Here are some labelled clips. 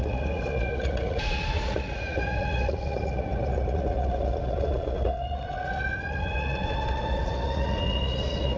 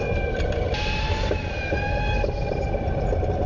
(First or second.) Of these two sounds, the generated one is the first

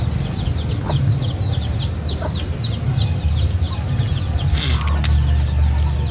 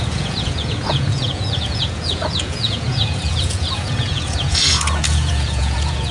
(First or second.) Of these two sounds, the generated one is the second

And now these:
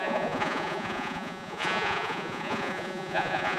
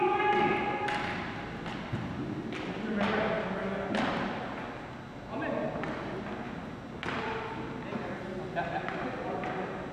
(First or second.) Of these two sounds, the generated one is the first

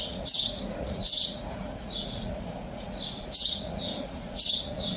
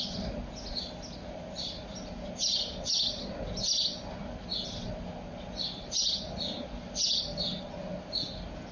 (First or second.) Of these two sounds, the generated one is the first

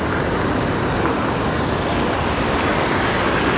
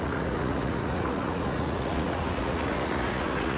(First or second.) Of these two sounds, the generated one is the second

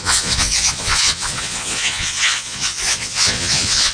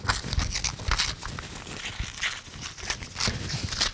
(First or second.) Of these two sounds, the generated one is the first